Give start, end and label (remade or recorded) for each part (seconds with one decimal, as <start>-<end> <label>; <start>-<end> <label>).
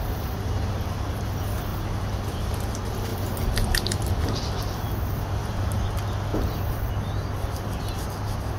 0.0-1.7 recorded; 1.7-2.5 remade; 2.5-3.1 recorded; 3.1-5.6 remade; 5.6-6.3 recorded; 6.3-6.9 remade; 6.9-8.6 recorded